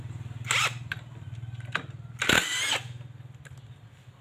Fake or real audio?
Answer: real